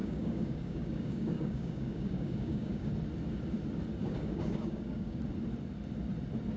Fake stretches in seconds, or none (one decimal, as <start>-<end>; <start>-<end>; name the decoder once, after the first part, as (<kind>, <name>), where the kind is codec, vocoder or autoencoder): 0.0-2.9 (codec, DAC); 4.0-5.2